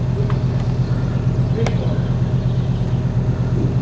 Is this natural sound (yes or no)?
yes